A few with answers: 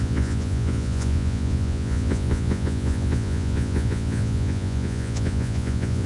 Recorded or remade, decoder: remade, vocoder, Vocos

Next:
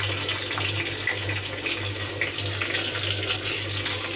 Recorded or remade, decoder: recorded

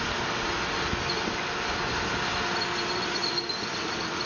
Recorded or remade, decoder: recorded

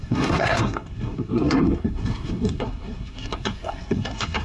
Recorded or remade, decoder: remade, codec, SNAC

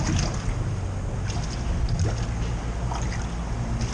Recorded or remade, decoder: recorded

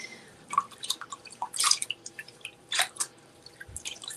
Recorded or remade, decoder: remade, vocoder, BigVGAN v2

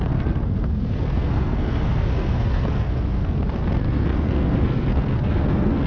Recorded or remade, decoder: remade, codec, SNAC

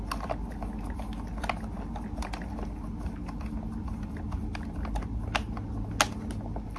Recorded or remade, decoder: recorded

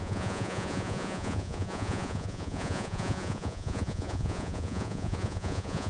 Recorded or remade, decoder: remade, vocoder, Vocos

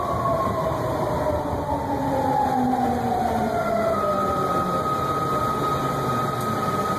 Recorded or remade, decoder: recorded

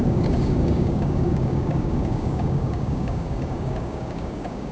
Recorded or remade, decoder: remade, codec, DAC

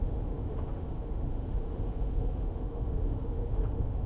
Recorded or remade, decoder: remade, autoencoder, DAC-VAE